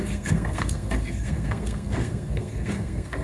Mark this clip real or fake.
fake